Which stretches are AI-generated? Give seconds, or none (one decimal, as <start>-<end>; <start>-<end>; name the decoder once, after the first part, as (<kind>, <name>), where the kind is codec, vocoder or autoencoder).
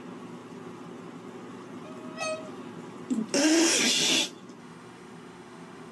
4.6-5.9 (autoencoder, DAC-VAE)